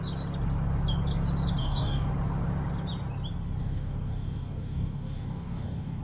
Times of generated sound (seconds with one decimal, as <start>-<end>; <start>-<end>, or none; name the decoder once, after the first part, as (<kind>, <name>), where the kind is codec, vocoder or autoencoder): 1.6-2.1 (codec, DAC); 3.6-6.0